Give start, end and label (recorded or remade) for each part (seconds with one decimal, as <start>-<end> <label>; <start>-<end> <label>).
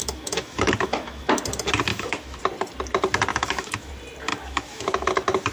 0.0-1.4 remade; 1.4-1.9 recorded; 1.9-2.4 remade; 2.4-3.3 recorded; 3.3-3.9 remade; 3.9-4.3 recorded; 4.3-5.1 remade; 5.1-5.5 recorded